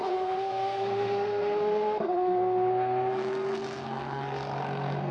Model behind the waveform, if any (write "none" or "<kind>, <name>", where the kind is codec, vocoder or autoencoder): codec, SNAC